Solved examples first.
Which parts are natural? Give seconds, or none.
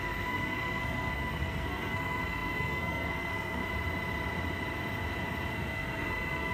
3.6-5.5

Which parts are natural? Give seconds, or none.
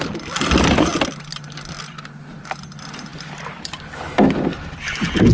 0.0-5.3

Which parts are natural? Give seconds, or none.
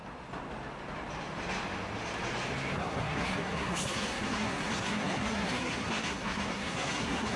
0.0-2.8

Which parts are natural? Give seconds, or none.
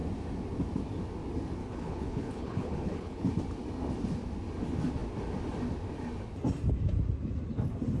0.0-1.6; 3.3-8.0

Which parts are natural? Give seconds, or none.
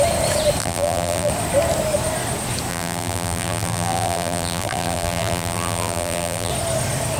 0.0-0.6; 1.3-2.7; 6.5-7.2